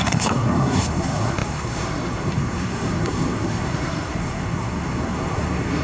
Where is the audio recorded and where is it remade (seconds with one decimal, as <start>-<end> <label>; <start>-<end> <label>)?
0.0-5.8 remade